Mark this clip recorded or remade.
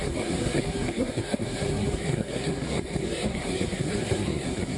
remade